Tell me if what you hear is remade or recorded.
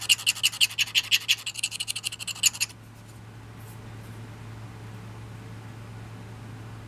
recorded